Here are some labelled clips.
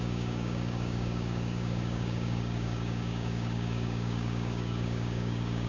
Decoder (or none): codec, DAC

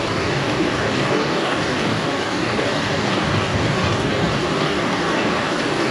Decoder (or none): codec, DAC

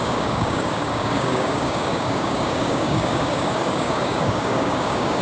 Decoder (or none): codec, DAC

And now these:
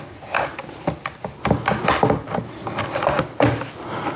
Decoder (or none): none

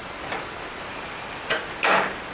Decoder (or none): none